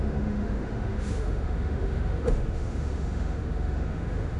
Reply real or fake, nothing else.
fake